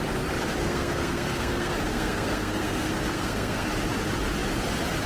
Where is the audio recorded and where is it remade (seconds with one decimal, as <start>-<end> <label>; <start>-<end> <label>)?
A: 0.0-0.6 recorded; 0.6-3.7 remade; 3.7-5.1 recorded